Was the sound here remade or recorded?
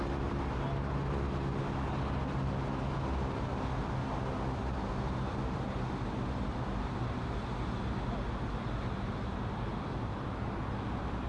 recorded